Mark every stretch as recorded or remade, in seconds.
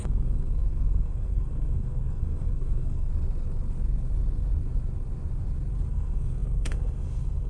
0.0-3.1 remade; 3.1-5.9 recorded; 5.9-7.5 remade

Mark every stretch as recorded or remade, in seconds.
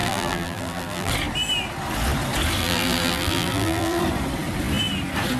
0.0-1.1 remade; 1.1-2.6 recorded; 2.6-4.0 remade; 4.0-5.4 recorded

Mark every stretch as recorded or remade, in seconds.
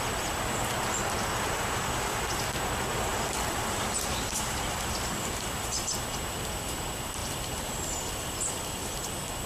0.0-3.1 recorded; 3.1-5.8 remade; 5.8-7.2 recorded; 7.2-9.1 remade; 9.1-9.5 recorded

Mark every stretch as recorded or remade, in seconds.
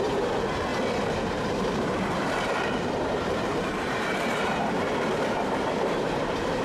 0.0-0.7 remade; 0.7-1.3 recorded; 1.3-6.6 remade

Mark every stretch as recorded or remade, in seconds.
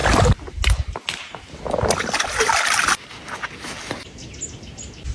0.0-5.1 recorded